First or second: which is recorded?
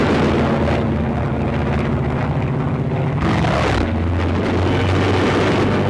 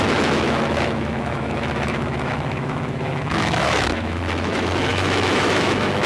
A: first